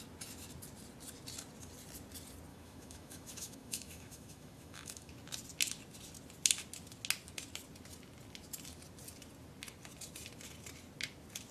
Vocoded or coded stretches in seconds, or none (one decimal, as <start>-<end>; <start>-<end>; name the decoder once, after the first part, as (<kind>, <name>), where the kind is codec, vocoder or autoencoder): 2.5-5.1 (autoencoder, DAC-VAE)